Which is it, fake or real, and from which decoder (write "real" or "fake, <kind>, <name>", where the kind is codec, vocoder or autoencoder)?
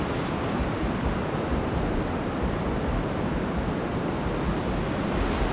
real